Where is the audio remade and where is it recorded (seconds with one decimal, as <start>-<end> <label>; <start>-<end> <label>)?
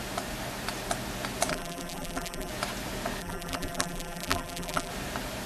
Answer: 0.0-1.5 recorded; 1.5-2.5 remade; 2.5-3.2 recorded; 3.2-4.9 remade; 4.9-5.5 recorded